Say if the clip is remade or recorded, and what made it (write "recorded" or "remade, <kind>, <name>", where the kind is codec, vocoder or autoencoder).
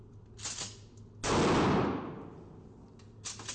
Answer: recorded